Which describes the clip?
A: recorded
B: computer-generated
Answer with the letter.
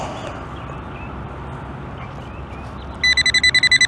A